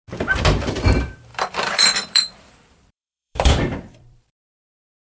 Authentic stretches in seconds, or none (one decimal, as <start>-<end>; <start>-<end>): 0.0-1.3; 4.4-5.1